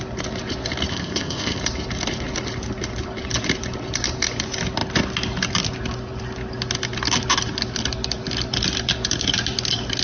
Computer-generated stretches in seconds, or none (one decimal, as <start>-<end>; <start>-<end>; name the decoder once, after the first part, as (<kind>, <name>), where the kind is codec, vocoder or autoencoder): 0.9-1.6 (codec, ZipCodec)